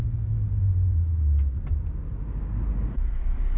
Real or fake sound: real